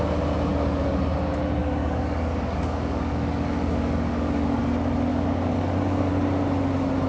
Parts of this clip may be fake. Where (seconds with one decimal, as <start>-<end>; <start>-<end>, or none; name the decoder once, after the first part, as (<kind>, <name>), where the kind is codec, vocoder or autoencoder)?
0.5-1.0 (codec, DAC); 1.6-4.6; 5.1-6.1

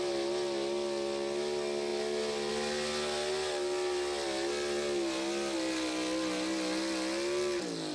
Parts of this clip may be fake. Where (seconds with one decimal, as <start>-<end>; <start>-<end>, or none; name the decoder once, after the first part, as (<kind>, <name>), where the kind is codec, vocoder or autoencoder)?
none

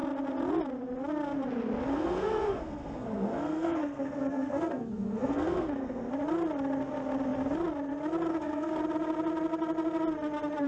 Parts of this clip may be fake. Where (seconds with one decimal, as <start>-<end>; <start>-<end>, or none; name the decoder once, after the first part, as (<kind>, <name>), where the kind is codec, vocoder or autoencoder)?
1.9-6.1 (codec, SNAC); 8.3-8.8

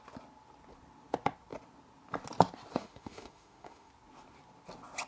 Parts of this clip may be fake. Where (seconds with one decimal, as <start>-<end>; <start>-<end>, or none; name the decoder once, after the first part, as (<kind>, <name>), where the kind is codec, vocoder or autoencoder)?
2.7-3.9 (autoencoder, DAC-VAE)

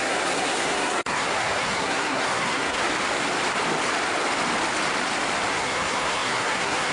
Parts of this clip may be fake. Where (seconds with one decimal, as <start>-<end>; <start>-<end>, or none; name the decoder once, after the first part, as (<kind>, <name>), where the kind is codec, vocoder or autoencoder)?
0.0-2.8 (codec, SNAC); 5.5-6.9

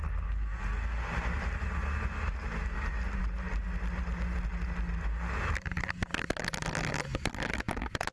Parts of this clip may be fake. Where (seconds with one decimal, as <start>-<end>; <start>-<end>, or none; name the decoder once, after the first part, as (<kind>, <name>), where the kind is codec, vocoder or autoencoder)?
none